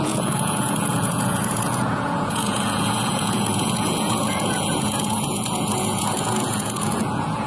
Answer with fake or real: fake